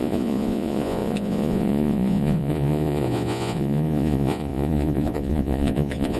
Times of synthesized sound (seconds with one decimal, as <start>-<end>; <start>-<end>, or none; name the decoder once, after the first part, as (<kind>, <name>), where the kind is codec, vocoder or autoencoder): 0.0-6.2 (vocoder, Vocos)